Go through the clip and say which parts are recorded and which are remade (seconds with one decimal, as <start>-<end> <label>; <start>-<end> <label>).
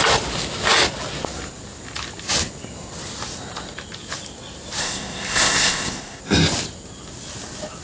0.0-4.8 recorded; 4.8-6.2 remade; 6.2-7.8 recorded